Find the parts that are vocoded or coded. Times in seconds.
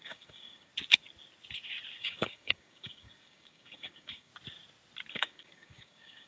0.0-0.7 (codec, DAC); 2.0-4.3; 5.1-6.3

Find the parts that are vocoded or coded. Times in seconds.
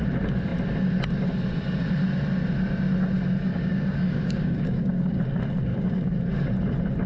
3.5-5.2 (codec, DAC); 5.7-6.2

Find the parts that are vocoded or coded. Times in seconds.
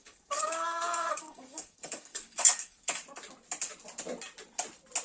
0.0-3.0 (codec, DAC)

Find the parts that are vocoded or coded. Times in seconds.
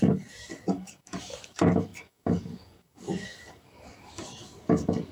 0.0-5.1 (codec, DAC)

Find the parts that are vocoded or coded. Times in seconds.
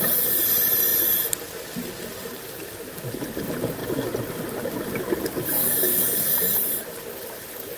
5.6-6.3 (codec, DAC)